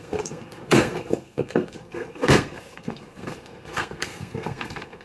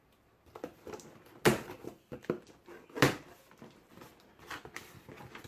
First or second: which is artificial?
first